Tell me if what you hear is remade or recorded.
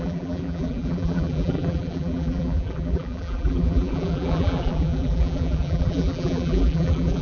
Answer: remade